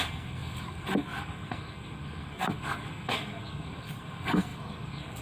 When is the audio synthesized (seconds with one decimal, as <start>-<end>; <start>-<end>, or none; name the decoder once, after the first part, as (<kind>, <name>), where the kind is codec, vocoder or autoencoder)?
0.0-5.2 (codec, SNAC)